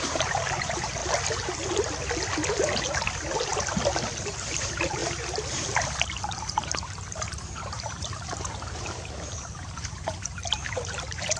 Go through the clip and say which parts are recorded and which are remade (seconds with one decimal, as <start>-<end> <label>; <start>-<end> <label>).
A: 0.0-1.0 remade; 1.0-2.8 recorded; 2.8-3.5 remade; 3.5-4.3 recorded; 4.3-5.0 remade; 5.0-6.2 recorded; 6.2-11.4 remade